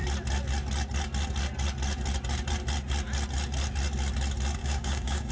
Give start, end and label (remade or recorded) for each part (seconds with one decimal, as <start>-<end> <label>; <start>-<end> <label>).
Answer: 0.0-4.6 recorded; 4.6-5.3 remade